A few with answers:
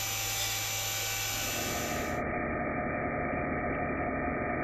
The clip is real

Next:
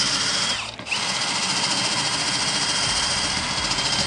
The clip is real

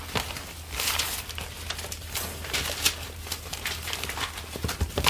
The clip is real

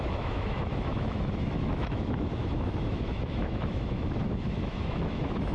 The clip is fake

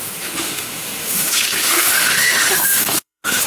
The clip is fake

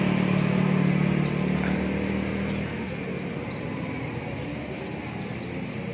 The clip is real